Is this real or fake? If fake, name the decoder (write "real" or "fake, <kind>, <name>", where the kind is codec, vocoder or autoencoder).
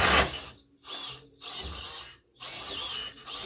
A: real